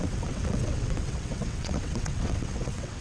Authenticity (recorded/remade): remade